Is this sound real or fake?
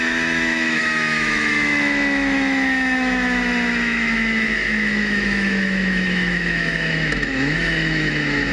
fake